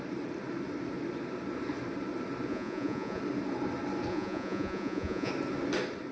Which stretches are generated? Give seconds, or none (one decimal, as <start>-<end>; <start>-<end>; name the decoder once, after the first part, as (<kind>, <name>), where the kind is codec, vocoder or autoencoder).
2.5-3.2 (vocoder, Vocos); 4.1-5.3